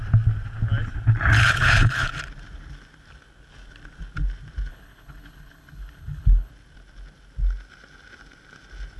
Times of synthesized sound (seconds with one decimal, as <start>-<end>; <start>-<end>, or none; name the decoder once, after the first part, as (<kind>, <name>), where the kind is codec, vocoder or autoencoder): 1.4-2.1 (codec, HILCodec); 4.7-6.5